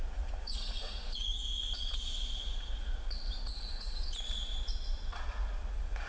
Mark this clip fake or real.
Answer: fake